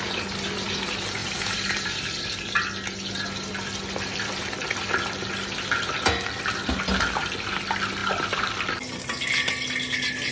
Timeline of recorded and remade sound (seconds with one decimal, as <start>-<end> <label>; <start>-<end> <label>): 0.0-1.2 recorded; 1.2-1.9 remade; 1.9-10.3 recorded